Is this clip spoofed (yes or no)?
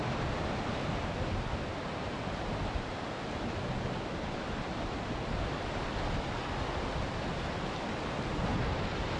no